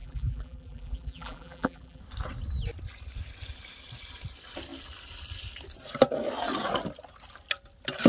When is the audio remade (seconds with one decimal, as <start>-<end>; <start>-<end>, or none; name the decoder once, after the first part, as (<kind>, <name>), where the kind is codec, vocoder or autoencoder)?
0.0-2.0 (vocoder, BigVGAN v2)